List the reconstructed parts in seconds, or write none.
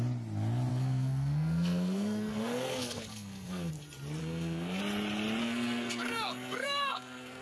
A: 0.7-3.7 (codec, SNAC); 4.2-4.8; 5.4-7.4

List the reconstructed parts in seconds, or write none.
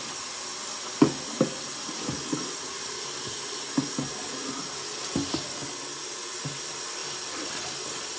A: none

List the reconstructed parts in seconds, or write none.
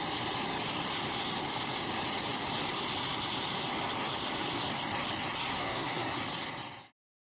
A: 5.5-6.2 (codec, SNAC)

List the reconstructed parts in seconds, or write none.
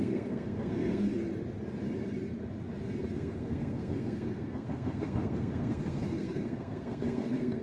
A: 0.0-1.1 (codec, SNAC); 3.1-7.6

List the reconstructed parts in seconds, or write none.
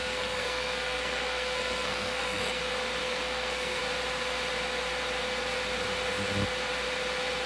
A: 0.0-2.6 (codec, SNAC); 3.0-3.8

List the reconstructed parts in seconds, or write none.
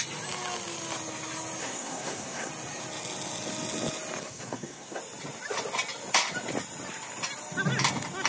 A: 1.6-2.5 (codec, SNAC); 4.2-5.0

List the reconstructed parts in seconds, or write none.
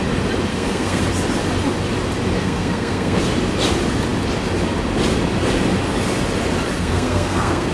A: 0.5-1.0 (codec, SNAC); 2.4-3.2; 6.8-7.7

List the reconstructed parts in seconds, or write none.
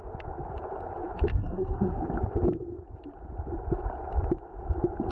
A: 1.3-2.0 (codec, SNAC)